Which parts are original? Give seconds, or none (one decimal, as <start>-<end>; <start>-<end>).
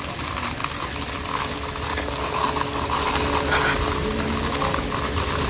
0.0-5.5